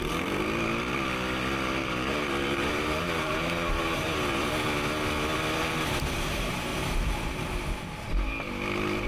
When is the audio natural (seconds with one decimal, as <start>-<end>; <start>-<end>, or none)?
0.0-1.8; 4.5-6.7; 7.5-9.1

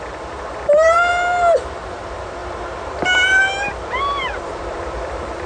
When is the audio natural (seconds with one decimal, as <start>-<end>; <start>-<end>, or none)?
none